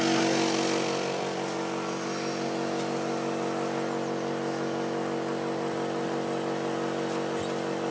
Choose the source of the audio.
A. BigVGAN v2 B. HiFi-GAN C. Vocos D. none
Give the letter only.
D